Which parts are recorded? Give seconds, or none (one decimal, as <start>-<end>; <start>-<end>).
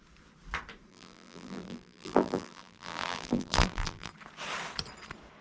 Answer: 0.0-0.9; 4.1-5.4